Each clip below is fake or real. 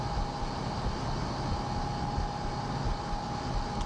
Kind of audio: real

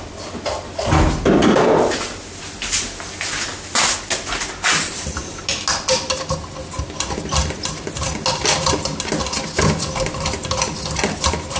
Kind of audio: real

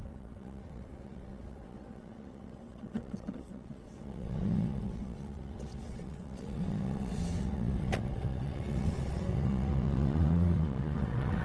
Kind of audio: fake